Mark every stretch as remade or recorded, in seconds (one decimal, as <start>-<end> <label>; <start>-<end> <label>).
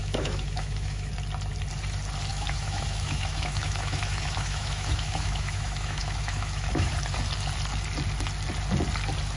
0.0-1.1 remade; 1.1-2.3 recorded; 2.3-6.9 remade; 6.9-9.4 recorded